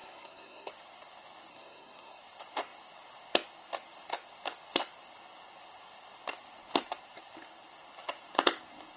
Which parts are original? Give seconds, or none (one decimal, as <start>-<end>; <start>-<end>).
0.7-1.5; 2.2-9.0